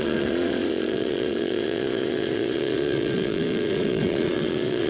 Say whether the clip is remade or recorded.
remade